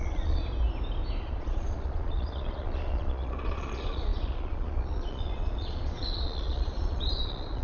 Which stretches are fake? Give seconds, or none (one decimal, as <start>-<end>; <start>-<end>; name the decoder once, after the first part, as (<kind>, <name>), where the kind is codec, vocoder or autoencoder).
0.0-0.4 (vocoder, Vocos); 1.2-7.6